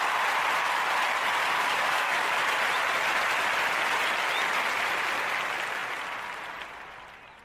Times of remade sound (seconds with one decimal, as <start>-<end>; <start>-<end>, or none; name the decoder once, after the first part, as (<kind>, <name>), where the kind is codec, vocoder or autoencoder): 1.4-2.3 (codec, DAC)